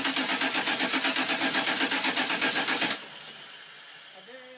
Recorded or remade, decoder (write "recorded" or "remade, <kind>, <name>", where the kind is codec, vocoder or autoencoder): recorded